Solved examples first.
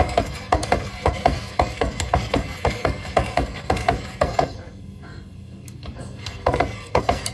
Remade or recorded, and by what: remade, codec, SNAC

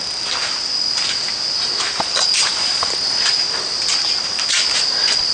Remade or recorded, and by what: recorded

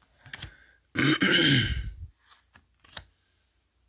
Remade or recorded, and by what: recorded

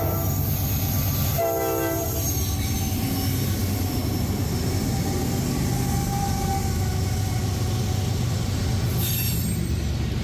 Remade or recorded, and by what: recorded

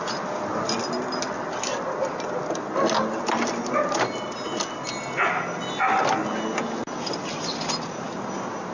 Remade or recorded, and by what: recorded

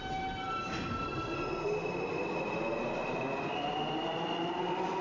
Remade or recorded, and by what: recorded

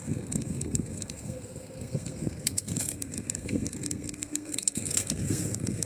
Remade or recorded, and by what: remade, codec, SNAC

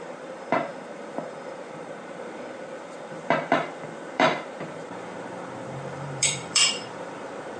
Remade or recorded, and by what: remade, vocoder, BigVGAN v2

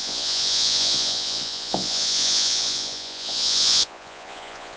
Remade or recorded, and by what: remade, vocoder, Vocos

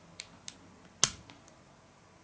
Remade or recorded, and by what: recorded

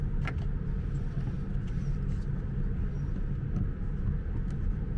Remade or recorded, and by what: recorded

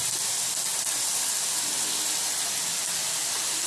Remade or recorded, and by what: recorded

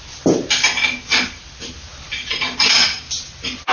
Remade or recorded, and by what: recorded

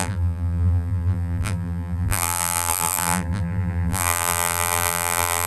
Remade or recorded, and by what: remade, vocoder, BigVGAN v2